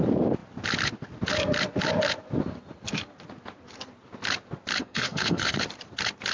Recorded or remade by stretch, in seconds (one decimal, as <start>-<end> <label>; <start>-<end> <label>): 0.0-4.8 recorded; 4.8-5.6 remade; 5.6-6.3 recorded